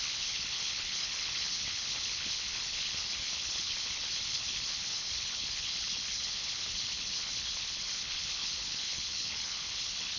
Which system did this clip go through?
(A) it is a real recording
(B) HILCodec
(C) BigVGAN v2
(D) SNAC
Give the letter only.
B